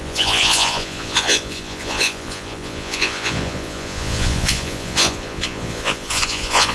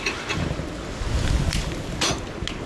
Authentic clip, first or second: second